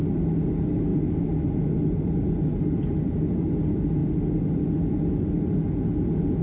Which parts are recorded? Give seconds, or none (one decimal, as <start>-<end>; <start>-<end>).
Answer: 0.0-6.4